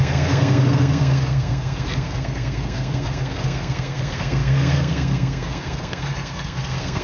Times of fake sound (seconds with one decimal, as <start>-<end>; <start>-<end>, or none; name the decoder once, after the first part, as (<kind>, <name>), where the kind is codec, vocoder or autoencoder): 0.0-7.0 (codec, SNAC)